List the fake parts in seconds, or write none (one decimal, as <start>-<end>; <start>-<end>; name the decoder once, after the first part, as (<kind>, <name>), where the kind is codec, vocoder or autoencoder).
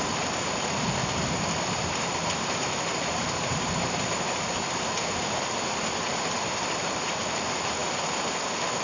0.0-1.0 (vocoder, BigVGAN v2); 1.6-7.8